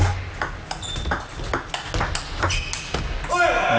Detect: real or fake real